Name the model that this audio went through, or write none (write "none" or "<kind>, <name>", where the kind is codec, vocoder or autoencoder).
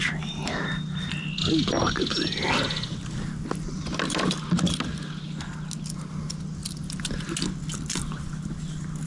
none